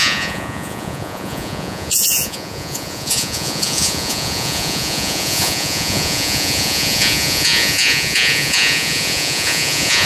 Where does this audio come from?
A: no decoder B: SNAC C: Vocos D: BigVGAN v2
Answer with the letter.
C